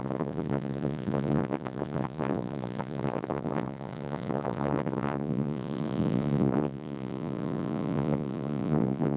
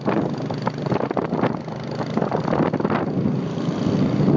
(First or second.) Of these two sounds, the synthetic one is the first